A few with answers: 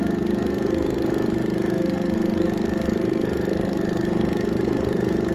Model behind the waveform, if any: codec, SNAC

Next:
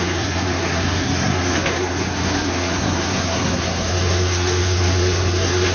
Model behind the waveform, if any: codec, SNAC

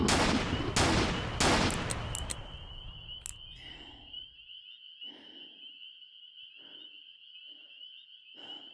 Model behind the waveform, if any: none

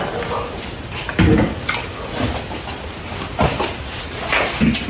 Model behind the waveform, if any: none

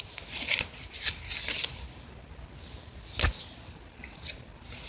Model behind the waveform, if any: none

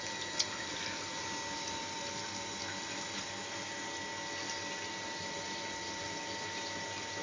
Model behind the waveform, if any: none